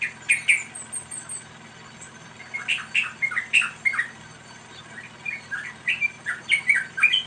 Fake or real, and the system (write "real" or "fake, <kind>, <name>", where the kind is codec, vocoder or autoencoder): real